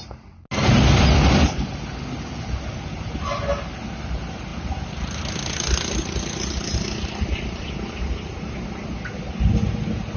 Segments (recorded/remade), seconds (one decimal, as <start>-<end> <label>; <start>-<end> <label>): 0.0-10.2 recorded